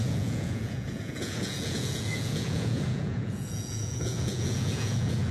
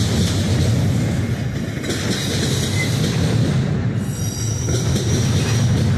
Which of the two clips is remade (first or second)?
first